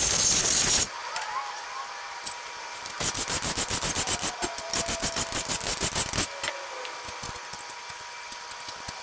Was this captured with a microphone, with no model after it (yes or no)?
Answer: yes